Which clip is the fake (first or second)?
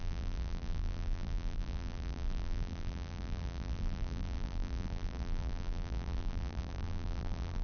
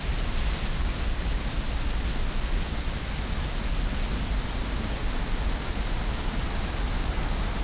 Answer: first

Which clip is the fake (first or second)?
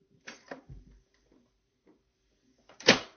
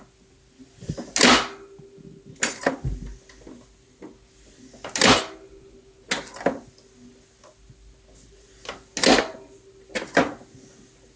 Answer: first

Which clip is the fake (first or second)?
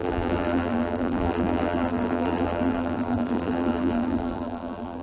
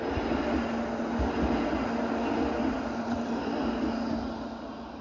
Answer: first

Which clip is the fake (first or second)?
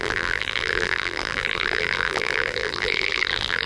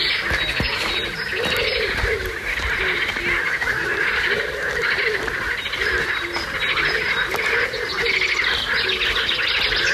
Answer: first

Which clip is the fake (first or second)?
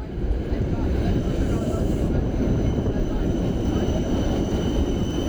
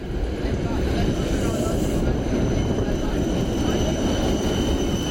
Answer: first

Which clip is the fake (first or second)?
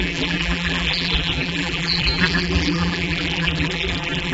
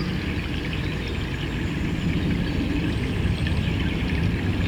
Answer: first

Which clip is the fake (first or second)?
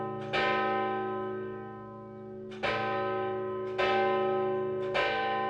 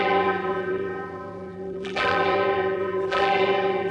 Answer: second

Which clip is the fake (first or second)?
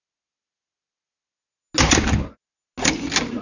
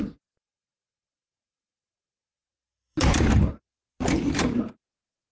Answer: second